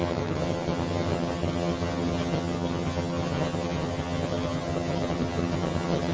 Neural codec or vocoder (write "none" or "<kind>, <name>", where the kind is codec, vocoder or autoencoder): vocoder, HiFi-GAN